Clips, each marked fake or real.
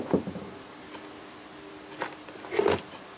real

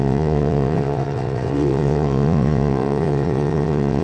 fake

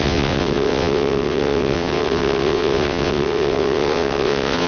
fake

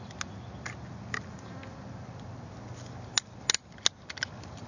real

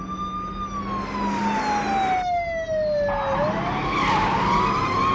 real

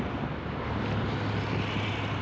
real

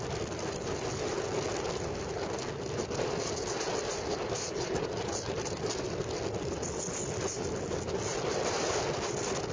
real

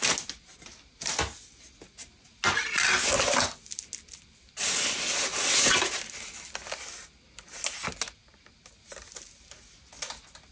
real